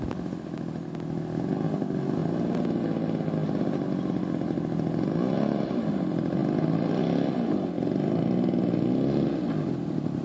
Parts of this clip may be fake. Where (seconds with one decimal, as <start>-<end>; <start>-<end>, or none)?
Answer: none